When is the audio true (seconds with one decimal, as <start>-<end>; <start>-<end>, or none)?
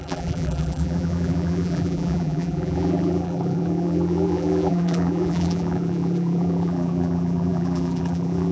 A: none